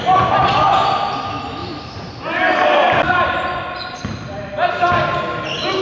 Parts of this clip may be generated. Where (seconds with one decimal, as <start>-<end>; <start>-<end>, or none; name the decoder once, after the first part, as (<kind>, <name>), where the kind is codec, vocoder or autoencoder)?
none